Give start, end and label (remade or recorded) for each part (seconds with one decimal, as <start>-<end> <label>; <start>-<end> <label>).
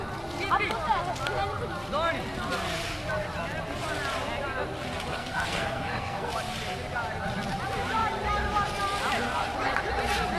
0.0-5.1 recorded; 5.1-6.3 remade; 6.3-10.4 recorded